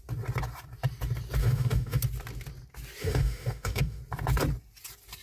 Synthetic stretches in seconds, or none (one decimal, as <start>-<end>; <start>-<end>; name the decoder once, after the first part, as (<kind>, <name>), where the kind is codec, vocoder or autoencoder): 1.4-2.0 (autoencoder, DAC-VAE); 3.0-4.0